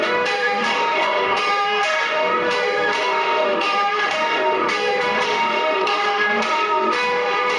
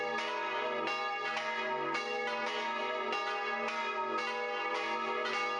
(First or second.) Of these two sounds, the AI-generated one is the first